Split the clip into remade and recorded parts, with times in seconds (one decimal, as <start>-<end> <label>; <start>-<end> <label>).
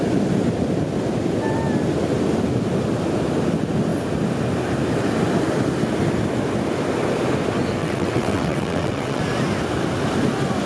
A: 0.0-7.8 recorded; 7.8-9.2 remade; 9.2-10.7 recorded